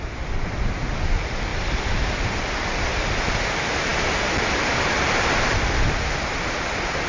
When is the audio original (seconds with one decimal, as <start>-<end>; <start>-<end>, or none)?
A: 0.0-7.1